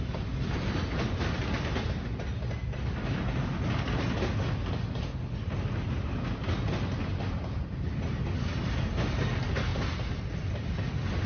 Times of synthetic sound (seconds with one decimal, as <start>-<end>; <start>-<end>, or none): none